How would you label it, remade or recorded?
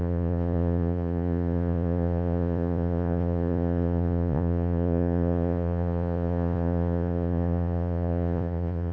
remade